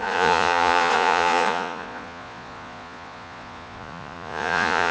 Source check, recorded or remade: remade